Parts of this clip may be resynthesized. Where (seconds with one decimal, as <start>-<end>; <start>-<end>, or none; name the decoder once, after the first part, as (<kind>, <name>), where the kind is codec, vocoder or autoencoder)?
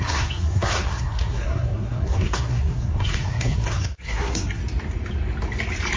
0.0-4.6 (codec, SNAC)